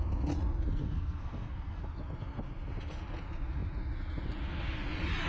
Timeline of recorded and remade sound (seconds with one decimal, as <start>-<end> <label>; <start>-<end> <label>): 0.0-0.8 recorded; 0.8-1.8 remade; 1.8-5.3 recorded